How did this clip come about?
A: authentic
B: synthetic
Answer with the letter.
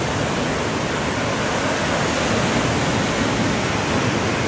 A